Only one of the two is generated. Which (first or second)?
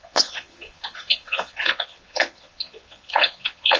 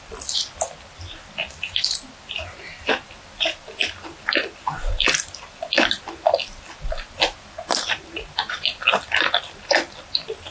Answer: first